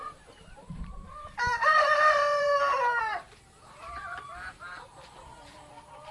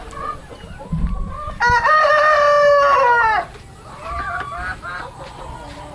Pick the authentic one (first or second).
second